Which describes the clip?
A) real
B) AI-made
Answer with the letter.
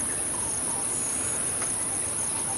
A